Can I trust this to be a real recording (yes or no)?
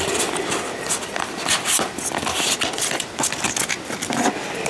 yes